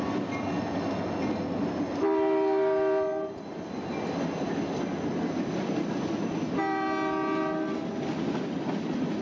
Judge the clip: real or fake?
real